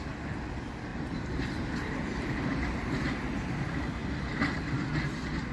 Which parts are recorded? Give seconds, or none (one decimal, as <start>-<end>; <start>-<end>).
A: 0.0-0.9; 2.9-5.5

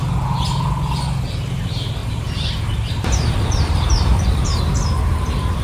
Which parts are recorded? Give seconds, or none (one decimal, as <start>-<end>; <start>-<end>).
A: 0.0-2.0; 4.6-5.6

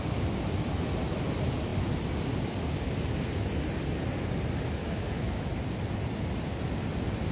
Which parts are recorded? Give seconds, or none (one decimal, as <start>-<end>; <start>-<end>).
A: 0.0-4.8; 5.5-7.3

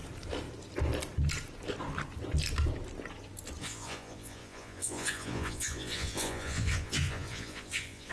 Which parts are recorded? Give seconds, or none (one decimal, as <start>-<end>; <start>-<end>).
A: 0.0-3.6

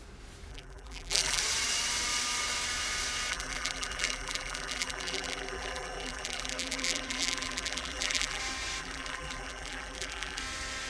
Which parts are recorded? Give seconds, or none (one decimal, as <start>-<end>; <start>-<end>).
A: 0.0-0.5; 1.4-3.3; 8.4-8.8; 10.4-10.9

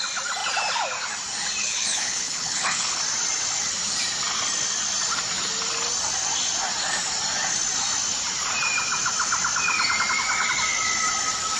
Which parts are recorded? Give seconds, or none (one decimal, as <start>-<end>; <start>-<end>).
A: 0.0-1.6; 3.0-11.6

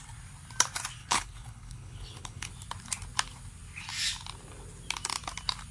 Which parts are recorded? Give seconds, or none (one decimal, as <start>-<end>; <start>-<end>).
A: 0.0-1.0; 2.5-5.7